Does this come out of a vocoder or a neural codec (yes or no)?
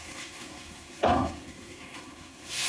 yes